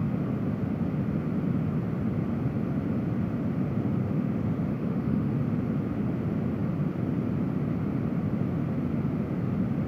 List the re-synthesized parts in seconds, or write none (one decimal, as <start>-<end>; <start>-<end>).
4.0-5.3